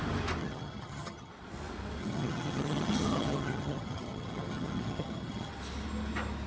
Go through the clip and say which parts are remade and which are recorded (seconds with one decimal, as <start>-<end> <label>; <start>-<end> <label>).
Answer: 0.0-0.4 recorded; 0.4-1.3 remade; 1.3-2.0 recorded; 2.0-5.5 remade; 5.5-6.5 recorded